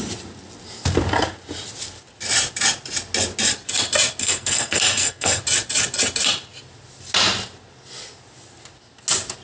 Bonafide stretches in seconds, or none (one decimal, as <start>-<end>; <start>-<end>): 0.0-4.2; 5.4-9.4